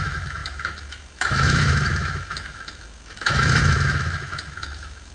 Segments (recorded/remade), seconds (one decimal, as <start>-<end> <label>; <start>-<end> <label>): 0.0-5.1 remade